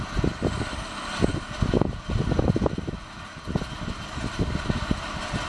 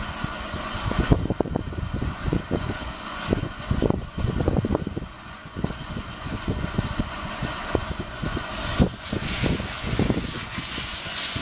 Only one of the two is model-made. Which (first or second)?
second